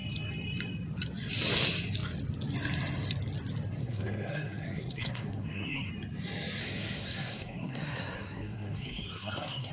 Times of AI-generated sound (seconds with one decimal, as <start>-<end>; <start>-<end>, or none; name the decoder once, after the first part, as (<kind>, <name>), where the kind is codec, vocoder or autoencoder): 3.8-5.9 (codec, SNAC); 6.6-9.7